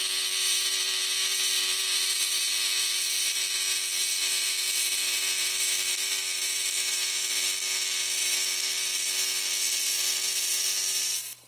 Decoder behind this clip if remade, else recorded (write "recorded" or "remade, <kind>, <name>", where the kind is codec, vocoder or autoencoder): remade, vocoder, BigVGAN v2